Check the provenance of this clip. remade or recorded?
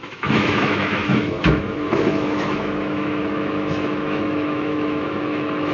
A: remade